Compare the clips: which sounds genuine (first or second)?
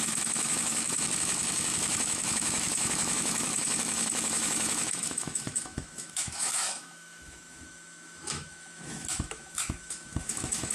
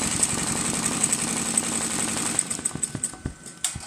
second